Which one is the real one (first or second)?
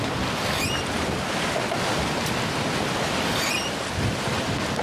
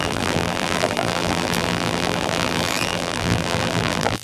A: first